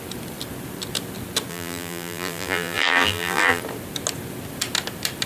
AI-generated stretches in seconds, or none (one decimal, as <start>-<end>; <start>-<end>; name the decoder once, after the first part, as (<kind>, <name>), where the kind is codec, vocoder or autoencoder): 1.5-3.6 (vocoder, BigVGAN v2)